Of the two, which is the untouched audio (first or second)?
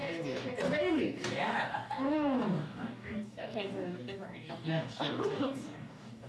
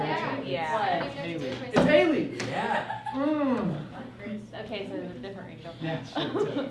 second